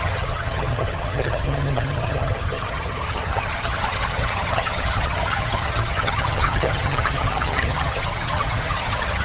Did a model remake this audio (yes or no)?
yes